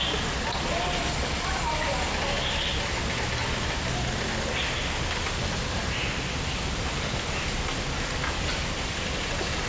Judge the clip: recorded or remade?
recorded